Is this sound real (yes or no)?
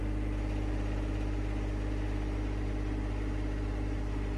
yes